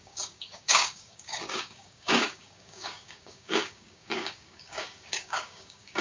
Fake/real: fake